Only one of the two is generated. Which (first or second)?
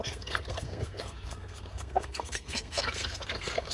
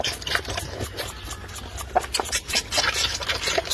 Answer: first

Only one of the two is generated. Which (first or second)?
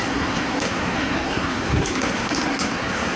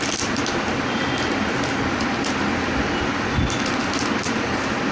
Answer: first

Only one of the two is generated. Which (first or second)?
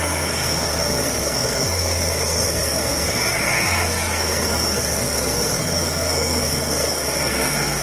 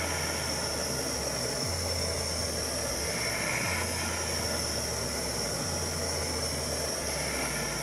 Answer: first